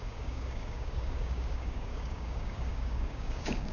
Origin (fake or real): fake